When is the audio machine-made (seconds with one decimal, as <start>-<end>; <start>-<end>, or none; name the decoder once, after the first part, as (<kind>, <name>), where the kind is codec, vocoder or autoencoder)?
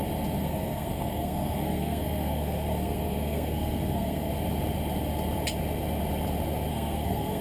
0.4-4.3 (codec, SNAC); 6.7-7.4